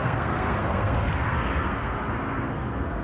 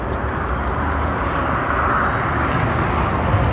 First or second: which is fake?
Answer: first